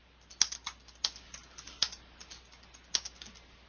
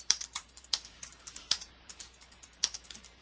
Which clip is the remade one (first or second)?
second